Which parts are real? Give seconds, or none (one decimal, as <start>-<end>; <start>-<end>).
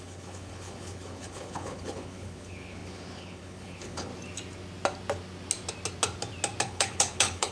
4.1-6.6